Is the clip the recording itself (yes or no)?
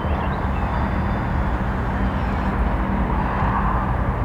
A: yes